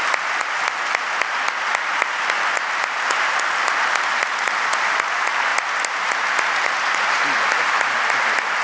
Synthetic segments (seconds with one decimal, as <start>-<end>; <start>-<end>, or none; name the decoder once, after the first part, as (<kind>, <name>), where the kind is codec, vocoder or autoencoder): none